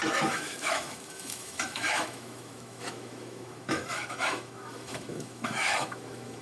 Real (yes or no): no